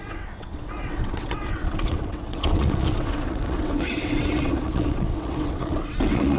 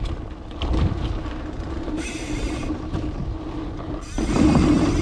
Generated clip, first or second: first